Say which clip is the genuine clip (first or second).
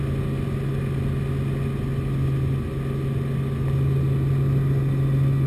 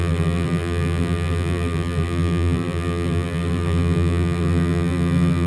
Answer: first